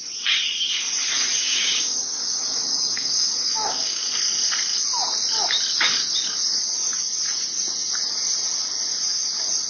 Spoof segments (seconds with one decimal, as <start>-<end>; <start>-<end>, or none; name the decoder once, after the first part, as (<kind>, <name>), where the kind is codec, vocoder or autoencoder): 1.4-4.1 (codec, DAC)